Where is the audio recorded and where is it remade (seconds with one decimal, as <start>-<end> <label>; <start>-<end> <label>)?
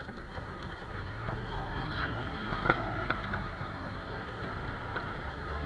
0.0-4.5 remade; 4.5-5.3 recorded; 5.3-5.7 remade